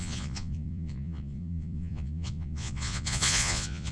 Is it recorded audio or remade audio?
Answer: remade